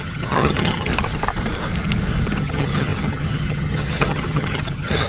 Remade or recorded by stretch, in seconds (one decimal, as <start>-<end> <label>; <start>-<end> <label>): 0.0-0.9 remade; 0.9-2.4 recorded; 2.4-5.1 remade